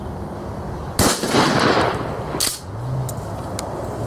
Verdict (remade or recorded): recorded